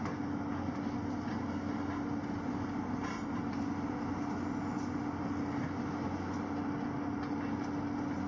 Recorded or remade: recorded